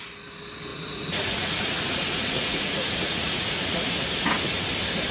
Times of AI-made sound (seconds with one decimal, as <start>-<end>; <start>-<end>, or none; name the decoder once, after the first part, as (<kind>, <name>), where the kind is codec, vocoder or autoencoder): 0.7-3.8 (vocoder, Vocos)